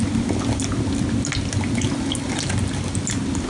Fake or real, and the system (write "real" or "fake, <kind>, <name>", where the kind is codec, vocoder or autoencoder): real